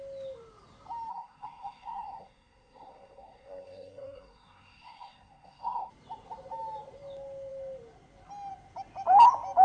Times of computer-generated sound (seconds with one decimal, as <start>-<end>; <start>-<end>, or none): 1.1-5.9